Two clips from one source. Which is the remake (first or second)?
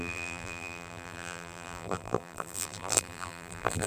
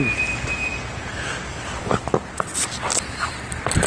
first